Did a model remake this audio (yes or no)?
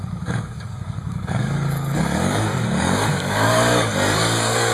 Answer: yes